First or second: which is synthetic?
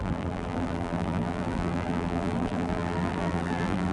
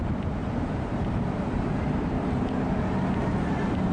first